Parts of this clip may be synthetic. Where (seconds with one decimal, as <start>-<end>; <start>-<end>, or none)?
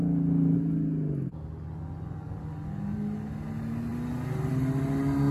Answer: none